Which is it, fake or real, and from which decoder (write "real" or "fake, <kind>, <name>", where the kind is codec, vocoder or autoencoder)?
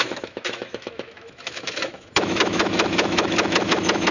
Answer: fake, autoencoder, DAC-VAE